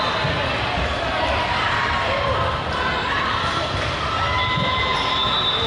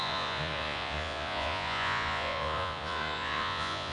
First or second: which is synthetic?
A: second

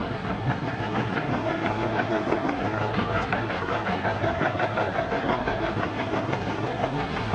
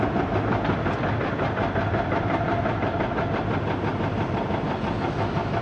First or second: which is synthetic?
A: first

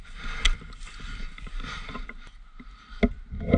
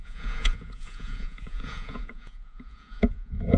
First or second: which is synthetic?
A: second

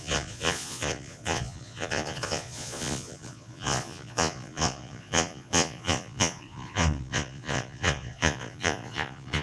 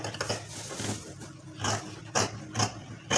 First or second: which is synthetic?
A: first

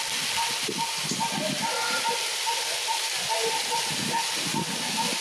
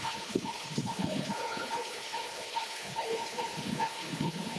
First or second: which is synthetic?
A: second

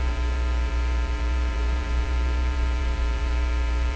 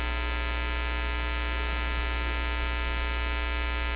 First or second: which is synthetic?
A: first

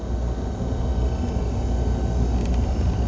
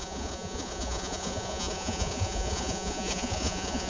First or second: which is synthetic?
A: second